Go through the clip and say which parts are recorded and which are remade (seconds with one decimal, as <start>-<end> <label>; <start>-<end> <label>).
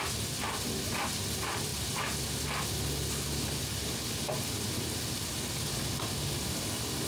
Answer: 0.0-7.1 recorded